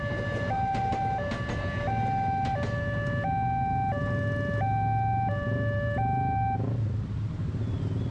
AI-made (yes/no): no